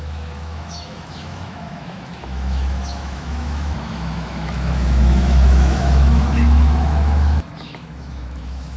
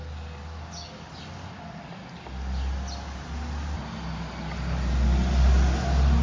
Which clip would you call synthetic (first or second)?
first